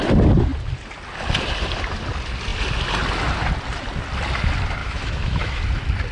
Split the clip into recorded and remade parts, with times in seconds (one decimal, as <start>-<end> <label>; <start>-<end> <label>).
0.0-4.8 recorded; 4.8-5.6 remade; 5.6-6.1 recorded